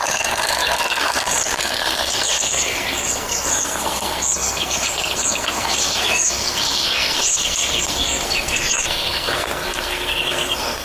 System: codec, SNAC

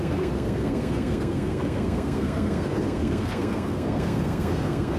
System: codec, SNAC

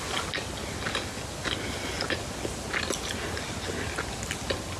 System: none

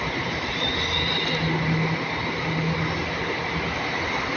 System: none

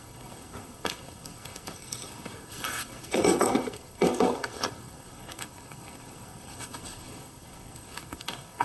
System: codec, SNAC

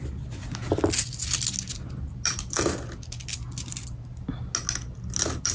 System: none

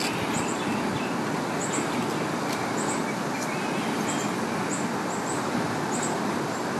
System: none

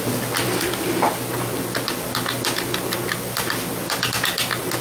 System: none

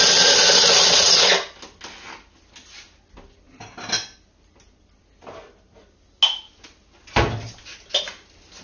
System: none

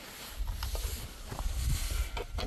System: none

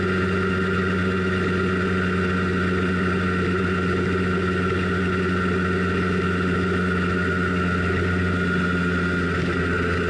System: none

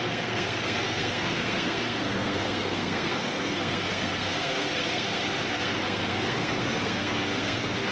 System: codec, SNAC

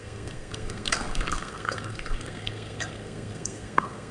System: codec, SNAC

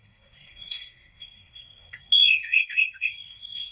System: codec, SNAC